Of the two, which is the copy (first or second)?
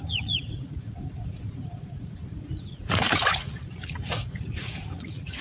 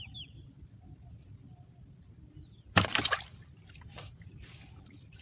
first